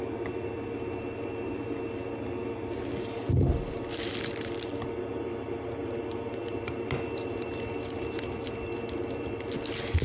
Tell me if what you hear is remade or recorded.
recorded